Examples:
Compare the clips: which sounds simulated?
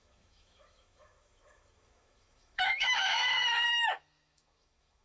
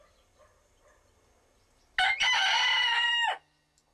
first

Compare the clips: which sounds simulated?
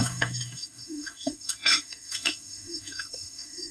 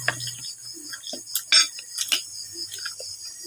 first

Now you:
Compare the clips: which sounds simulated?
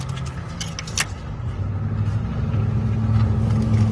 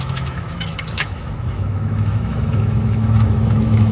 second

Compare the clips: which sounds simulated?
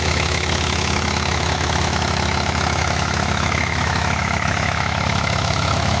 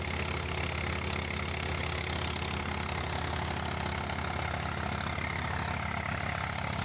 first